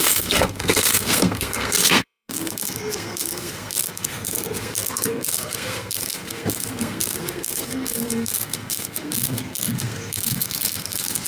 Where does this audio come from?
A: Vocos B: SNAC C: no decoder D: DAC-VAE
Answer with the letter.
B